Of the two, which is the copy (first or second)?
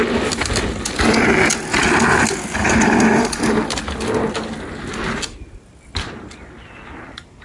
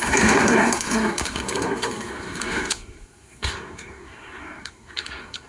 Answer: second